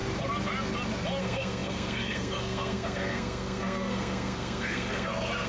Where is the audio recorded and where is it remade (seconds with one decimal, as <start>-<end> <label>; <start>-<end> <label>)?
0.0-1.2 recorded; 1.2-5.5 remade